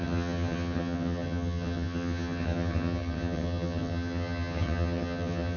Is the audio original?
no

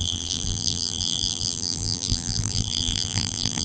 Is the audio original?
no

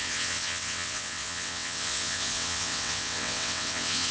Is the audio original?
no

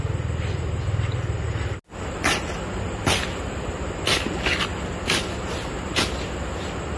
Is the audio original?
yes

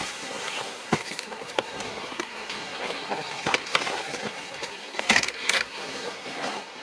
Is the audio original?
no